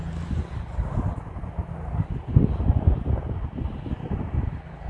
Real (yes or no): yes